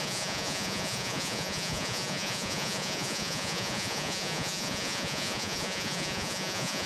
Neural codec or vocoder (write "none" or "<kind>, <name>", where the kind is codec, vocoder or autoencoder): vocoder, Vocos